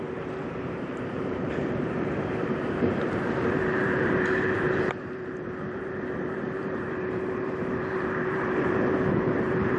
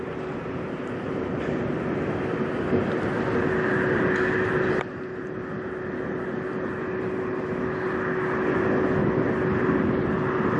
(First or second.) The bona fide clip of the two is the second